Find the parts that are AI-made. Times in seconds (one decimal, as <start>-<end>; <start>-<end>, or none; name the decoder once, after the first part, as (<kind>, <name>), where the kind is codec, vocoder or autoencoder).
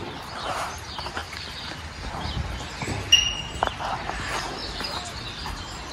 4.6-5.9 (vocoder, BigVGAN v2)